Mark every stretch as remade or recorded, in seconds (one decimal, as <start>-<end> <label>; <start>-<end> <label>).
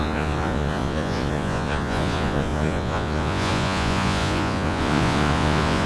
0.0-5.9 remade